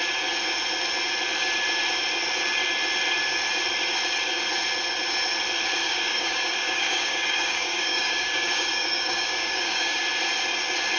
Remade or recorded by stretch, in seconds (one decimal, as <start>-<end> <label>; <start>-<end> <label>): 0.0-5.8 recorded; 5.8-10.0 remade; 10.0-11.0 recorded